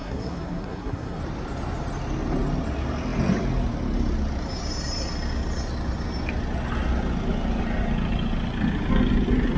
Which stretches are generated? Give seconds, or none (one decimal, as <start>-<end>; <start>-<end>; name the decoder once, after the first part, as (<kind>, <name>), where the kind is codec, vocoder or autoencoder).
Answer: 0.0-1.2 (codec, SNAC)